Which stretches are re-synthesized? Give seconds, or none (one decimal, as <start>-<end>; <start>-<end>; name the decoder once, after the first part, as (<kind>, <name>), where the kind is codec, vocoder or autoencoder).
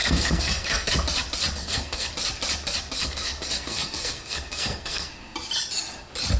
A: 0.0-0.9 (codec, SNAC); 1.6-2.1; 3.0-5.1